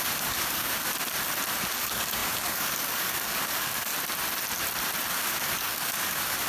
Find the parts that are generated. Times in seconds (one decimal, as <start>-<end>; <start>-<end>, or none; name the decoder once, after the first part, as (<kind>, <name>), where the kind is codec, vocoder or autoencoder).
0.0-0.9 (codec, DAC); 1.8-3.9; 5.1-6.5